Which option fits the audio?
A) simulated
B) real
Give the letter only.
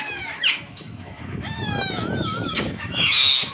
A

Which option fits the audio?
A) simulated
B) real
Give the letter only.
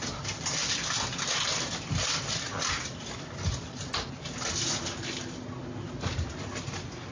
B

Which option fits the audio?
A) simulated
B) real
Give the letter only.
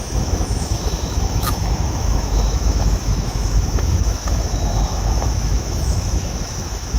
A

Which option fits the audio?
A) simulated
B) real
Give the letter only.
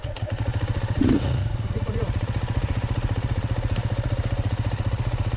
A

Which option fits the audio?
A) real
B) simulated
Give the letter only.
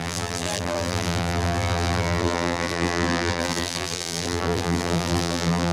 B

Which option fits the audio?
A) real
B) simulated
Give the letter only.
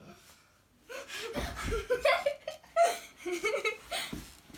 A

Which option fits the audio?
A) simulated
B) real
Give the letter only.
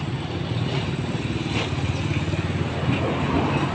B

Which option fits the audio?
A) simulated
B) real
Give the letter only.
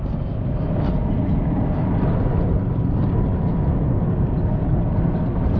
B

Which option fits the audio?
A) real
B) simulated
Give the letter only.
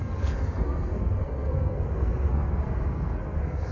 B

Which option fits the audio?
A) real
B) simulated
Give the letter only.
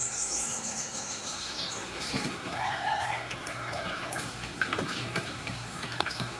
B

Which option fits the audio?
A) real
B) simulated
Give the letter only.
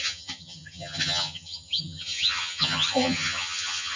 B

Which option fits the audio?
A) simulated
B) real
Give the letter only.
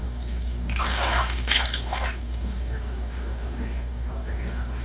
A